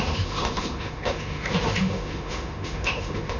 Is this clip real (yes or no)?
no